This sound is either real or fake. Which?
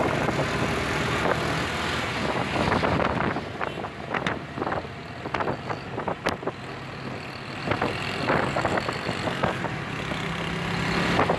real